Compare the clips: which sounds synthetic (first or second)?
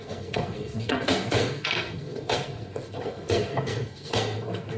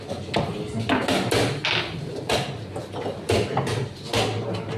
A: first